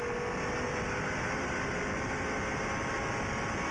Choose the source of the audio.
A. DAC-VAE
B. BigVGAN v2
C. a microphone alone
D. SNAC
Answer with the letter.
C